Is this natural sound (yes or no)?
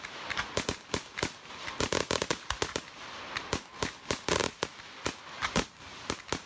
yes